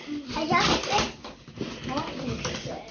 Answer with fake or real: real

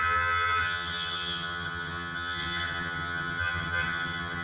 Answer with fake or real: fake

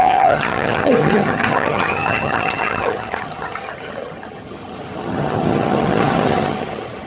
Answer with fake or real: fake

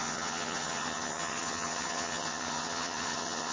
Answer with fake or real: fake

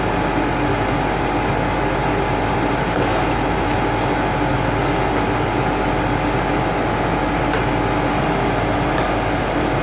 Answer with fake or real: real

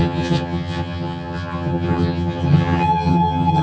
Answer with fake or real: fake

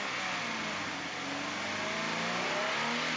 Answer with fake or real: real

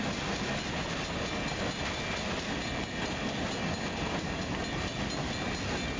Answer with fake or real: real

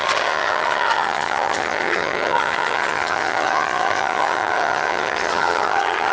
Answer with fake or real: fake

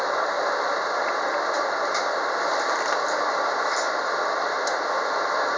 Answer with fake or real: real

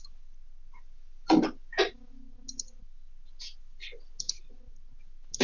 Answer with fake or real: real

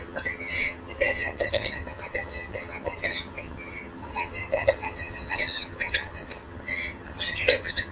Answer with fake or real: fake